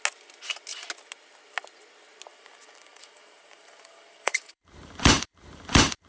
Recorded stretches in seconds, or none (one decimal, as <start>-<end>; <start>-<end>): 0.0-2.3